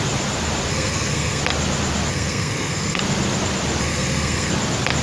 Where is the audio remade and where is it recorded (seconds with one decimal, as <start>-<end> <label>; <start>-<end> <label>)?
0.0-0.7 recorded; 0.7-1.4 remade; 1.4-2.1 recorded; 2.1-3.0 remade; 3.0-3.8 recorded; 3.8-4.5 remade; 4.5-5.0 recorded